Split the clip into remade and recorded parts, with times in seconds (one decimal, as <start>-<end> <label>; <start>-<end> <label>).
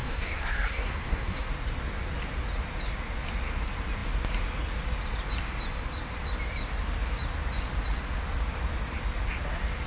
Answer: 0.0-1.5 remade; 1.5-9.9 recorded